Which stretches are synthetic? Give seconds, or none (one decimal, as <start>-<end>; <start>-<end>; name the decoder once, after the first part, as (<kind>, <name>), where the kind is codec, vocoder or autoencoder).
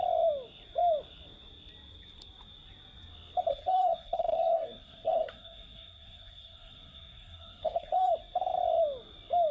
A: 3.5-8.1 (codec, SNAC)